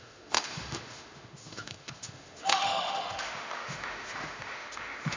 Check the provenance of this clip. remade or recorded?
remade